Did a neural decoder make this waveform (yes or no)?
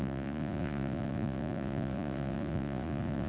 yes